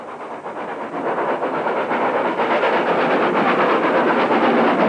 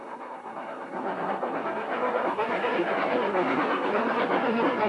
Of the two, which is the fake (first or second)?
second